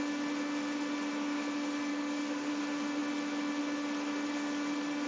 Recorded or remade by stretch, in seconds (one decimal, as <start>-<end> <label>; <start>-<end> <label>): 0.0-1.9 recorded; 1.9-2.5 remade; 2.5-5.1 recorded